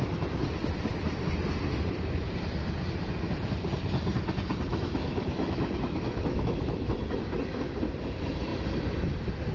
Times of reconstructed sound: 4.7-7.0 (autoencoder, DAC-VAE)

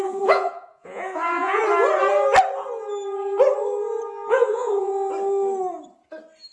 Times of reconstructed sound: 0.0-1.6 (vocoder, Vocos); 4.3-4.9